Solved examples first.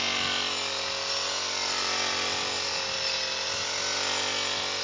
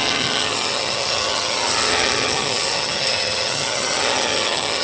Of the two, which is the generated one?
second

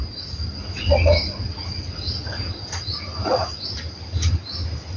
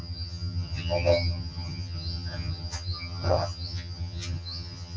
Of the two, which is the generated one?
second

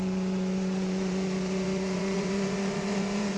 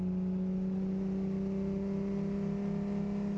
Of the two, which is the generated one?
first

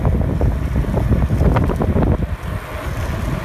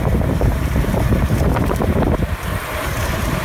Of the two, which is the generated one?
second